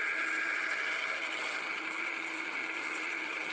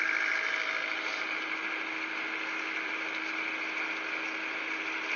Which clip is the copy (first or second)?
first